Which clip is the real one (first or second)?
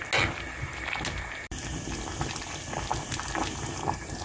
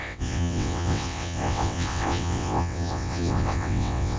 first